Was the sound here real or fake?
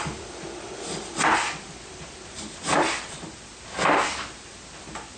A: real